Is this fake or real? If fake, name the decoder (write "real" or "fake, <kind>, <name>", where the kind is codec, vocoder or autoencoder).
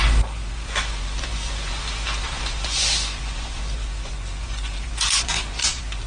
fake, vocoder, Vocos